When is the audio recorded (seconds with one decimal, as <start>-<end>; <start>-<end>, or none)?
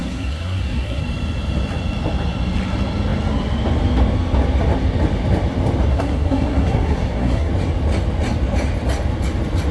1.0-5.9; 7.5-9.7